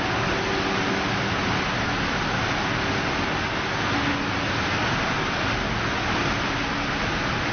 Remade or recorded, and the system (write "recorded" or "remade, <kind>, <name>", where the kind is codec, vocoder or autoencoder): recorded